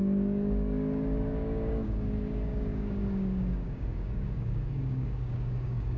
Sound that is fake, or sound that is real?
fake